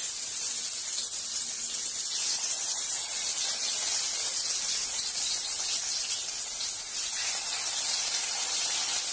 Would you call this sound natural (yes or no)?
yes